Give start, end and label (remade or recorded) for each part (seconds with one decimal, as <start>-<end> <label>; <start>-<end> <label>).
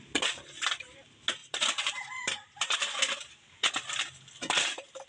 0.0-1.4 recorded; 1.4-3.7 remade; 3.7-5.1 recorded